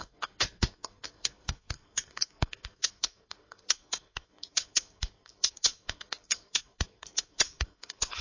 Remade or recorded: remade